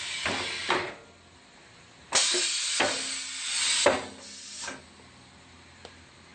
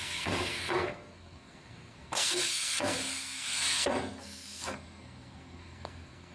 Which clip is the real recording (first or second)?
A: first